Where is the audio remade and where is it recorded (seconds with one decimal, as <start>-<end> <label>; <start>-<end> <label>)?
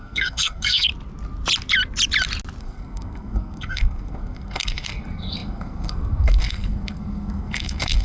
0.0-0.9 remade; 0.9-2.6 recorded; 2.6-8.0 remade